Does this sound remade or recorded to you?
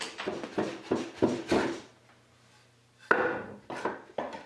recorded